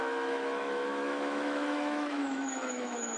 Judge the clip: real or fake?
fake